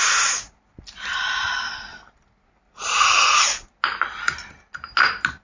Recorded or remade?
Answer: recorded